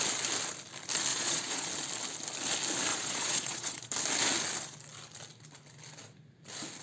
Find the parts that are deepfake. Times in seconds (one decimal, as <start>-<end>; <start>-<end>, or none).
1.1-1.7; 2.9-3.9